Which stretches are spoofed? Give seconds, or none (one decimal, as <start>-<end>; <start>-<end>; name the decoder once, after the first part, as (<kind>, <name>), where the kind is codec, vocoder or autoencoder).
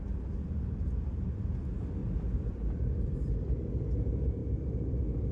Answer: 2.0-2.9 (vocoder, BigVGAN v2); 4.4-5.3